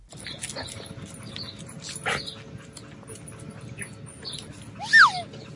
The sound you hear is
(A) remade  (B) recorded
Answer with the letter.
B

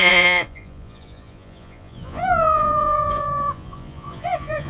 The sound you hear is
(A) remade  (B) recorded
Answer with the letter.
A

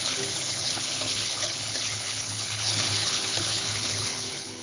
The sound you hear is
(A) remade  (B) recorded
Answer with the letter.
A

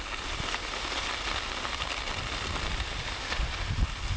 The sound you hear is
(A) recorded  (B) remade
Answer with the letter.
A